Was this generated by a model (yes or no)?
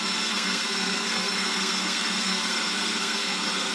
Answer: yes